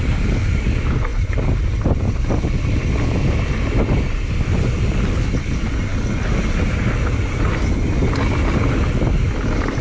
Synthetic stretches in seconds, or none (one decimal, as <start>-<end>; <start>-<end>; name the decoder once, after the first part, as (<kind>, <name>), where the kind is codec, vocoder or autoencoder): 1.1-1.9 (vocoder, BigVGAN v2)